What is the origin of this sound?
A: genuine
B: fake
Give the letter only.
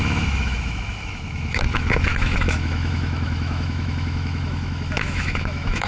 B